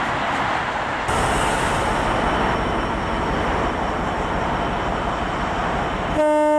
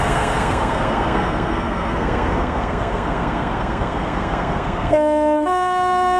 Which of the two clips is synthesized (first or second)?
second